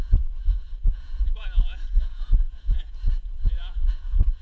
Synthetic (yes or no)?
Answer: yes